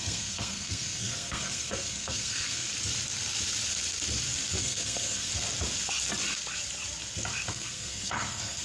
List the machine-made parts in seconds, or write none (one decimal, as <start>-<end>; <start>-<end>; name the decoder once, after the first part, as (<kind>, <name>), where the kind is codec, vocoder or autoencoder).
0.0-2.7 (codec, SNAC); 4.6-5.3; 7.5-8.6